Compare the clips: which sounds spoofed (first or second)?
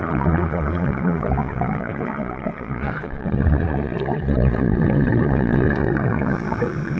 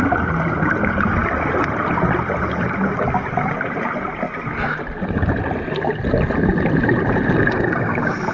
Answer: first